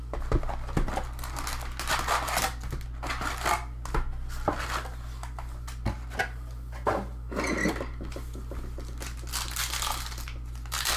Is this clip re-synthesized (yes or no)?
no